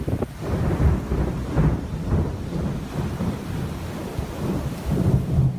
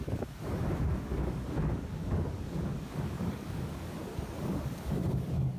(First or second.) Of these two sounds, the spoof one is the second